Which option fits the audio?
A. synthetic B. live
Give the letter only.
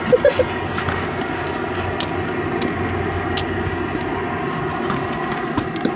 B